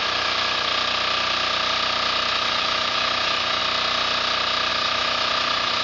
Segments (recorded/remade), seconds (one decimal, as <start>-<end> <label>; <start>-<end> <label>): 0.0-0.7 remade; 0.7-2.3 recorded; 2.3-3.6 remade; 3.6-4.7 recorded; 4.7-5.8 remade